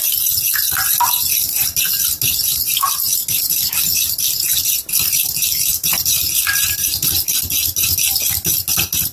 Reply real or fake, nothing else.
real